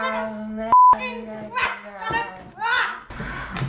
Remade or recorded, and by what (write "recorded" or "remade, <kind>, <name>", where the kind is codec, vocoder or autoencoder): recorded